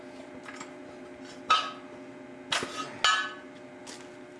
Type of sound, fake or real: real